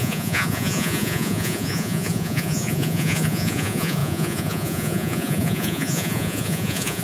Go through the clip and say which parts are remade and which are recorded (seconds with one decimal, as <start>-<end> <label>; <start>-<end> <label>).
0.0-7.0 remade